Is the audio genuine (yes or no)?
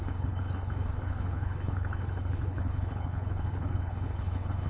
no